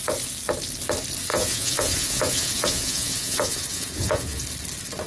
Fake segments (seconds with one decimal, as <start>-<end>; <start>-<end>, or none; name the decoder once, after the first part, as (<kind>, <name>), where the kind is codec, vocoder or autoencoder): 1.3-4.4 (vocoder, Vocos)